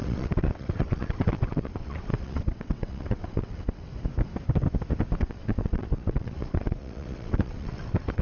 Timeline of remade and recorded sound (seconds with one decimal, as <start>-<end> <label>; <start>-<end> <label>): 0.0-3.9 remade; 3.9-5.2 recorded; 5.2-8.2 remade